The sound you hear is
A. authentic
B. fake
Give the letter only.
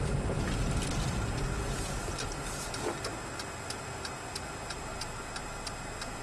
A